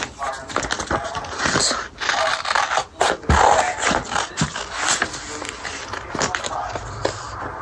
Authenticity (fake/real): real